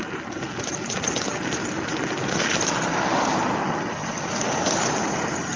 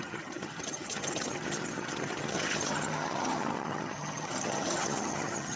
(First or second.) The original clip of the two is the first